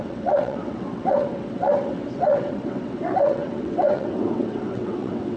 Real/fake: fake